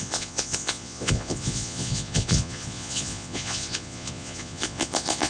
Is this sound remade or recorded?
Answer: remade